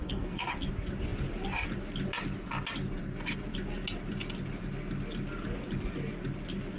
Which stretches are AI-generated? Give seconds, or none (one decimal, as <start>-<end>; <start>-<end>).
0.0-0.5